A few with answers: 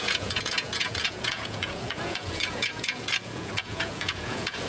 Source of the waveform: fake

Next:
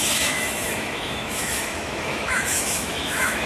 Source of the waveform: fake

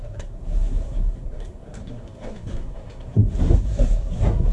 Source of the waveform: fake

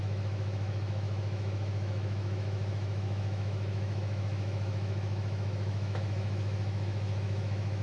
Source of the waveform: fake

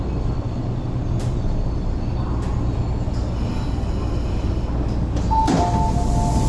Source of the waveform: real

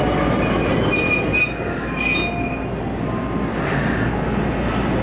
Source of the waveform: real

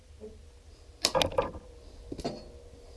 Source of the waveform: real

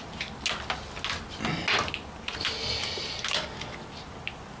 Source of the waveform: real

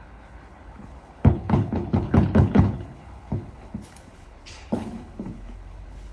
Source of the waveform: fake